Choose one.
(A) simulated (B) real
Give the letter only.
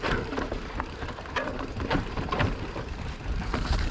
A